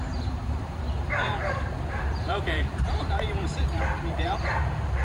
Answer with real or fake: fake